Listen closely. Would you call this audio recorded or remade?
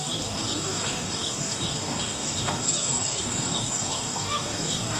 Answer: remade